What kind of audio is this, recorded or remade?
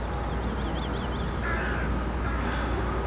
recorded